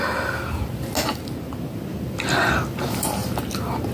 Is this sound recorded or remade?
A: recorded